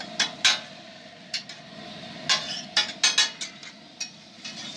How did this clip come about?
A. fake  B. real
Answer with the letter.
B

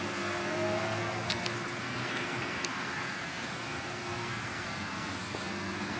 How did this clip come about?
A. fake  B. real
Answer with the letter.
A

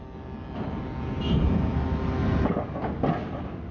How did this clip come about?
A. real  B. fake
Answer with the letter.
A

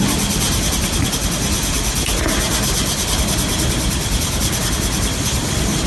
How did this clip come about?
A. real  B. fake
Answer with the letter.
A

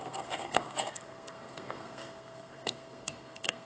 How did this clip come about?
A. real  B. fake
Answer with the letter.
B